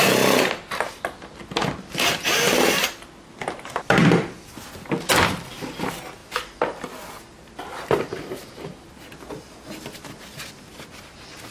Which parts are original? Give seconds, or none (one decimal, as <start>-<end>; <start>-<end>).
0.0-11.5